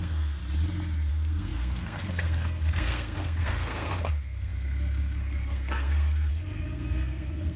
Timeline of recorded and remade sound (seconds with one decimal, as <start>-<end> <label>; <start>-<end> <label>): 0.0-0.4 remade; 0.4-1.1 recorded; 1.1-7.6 remade